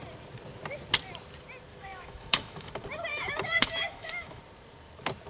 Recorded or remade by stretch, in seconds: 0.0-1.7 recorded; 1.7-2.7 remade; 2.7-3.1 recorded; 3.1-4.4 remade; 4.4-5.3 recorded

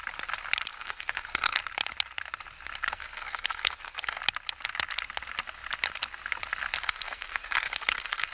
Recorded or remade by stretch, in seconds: 0.0-0.7 recorded; 0.7-1.6 remade; 1.6-2.9 recorded; 2.9-4.2 remade; 4.2-6.8 recorded; 6.8-8.3 remade

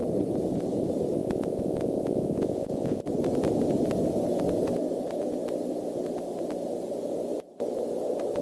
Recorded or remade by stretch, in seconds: 0.0-1.2 recorded; 1.2-3.0 remade; 3.0-8.4 recorded

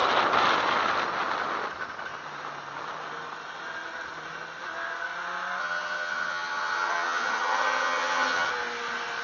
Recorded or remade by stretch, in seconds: 0.0-5.6 recorded; 5.6-8.5 remade; 8.5-9.2 recorded